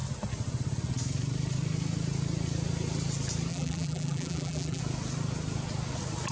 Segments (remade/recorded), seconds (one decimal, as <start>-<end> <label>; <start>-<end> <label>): 0.0-3.5 recorded; 3.5-4.8 remade; 4.8-6.3 recorded